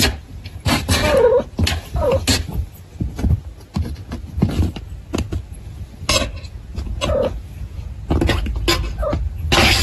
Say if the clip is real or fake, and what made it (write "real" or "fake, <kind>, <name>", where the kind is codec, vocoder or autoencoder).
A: real